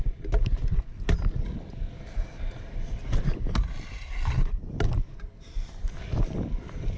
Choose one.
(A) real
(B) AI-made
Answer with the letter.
A